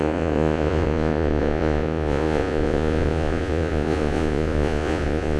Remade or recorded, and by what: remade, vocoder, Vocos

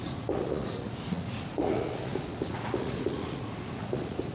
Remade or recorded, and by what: remade, vocoder, Vocos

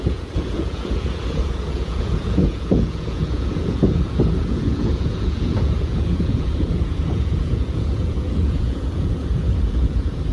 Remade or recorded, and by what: remade, vocoder, Vocos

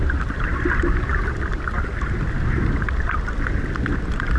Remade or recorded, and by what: recorded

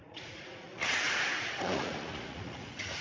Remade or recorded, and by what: remade, vocoder, Vocos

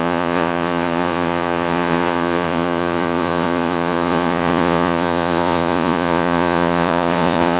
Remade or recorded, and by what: remade, vocoder, Vocos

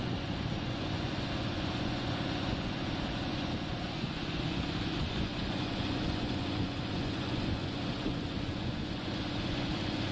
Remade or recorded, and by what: remade, vocoder, Vocos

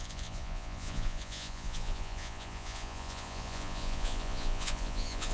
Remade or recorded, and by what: remade, vocoder, Vocos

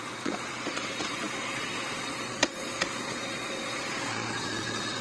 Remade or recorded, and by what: remade, vocoder, Vocos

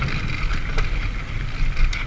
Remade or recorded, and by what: recorded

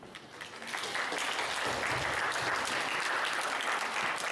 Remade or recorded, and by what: recorded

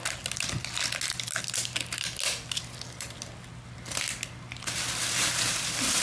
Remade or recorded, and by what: recorded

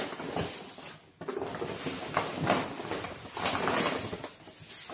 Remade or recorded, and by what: recorded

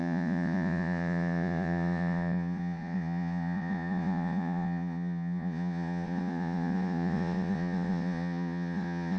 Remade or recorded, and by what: remade, vocoder, Vocos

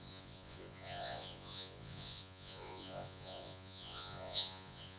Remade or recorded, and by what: remade, vocoder, Vocos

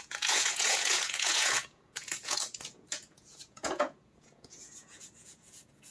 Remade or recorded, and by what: remade, vocoder, Vocos